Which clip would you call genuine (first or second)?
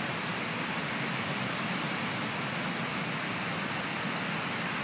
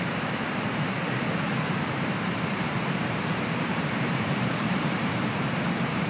first